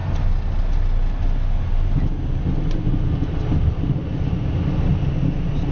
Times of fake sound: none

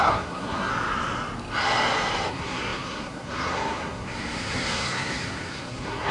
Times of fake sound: 0.0-0.7 (codec, SNAC); 2.3-6.1